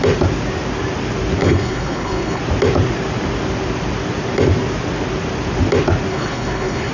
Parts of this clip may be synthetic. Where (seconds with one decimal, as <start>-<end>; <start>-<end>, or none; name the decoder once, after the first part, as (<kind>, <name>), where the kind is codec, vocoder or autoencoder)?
1.4-2.4 (codec, HILCodec); 6.1-6.9